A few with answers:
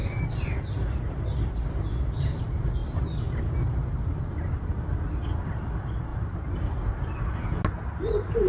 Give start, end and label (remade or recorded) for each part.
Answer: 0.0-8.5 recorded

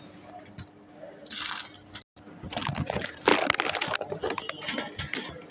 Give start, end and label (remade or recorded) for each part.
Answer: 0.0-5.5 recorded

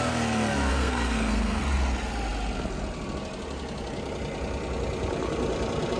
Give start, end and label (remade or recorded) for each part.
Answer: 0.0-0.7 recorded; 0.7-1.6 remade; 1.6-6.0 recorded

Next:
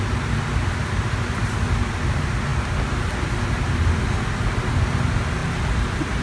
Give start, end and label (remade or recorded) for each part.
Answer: 0.0-6.2 recorded